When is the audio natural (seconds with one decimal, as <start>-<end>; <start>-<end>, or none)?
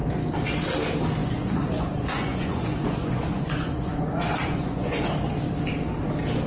0.0-1.2; 5.1-6.5